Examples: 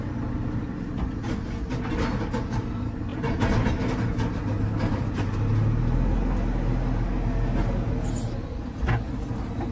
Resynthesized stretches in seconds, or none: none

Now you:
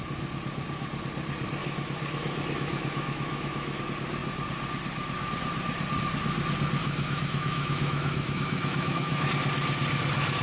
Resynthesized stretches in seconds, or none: 1.6-3.8 (autoencoder, DAC-VAE); 6.8-9.3

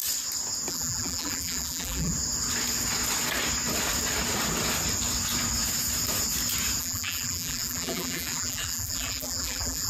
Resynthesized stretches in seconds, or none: 0.7-2.1 (vocoder, BigVGAN v2); 6.8-9.9

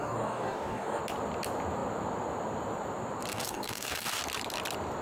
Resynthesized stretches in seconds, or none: 0.0-1.0 (codec, DAC); 3.3-4.2